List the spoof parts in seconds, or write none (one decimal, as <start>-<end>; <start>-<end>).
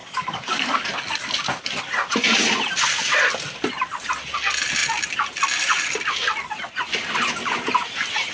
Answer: 0.0-0.9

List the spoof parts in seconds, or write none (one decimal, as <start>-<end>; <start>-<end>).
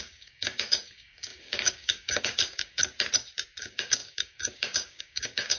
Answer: 0.0-2.8; 3.6-5.6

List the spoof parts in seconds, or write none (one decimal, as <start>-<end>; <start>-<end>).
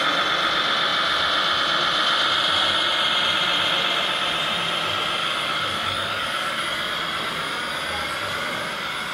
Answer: 5.2-6.6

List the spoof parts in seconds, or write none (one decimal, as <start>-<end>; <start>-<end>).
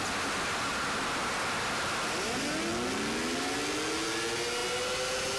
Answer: none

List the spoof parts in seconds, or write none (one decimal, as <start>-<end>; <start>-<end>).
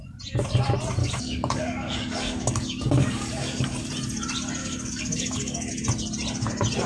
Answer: 1.0-3.9; 4.6-5.7